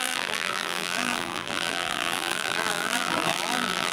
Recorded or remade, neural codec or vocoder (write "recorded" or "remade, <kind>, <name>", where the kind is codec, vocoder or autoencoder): remade, vocoder, BigVGAN v2